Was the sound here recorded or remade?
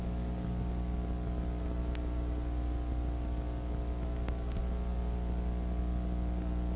recorded